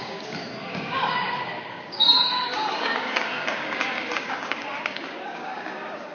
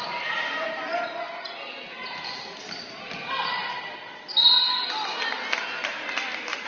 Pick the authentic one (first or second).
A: second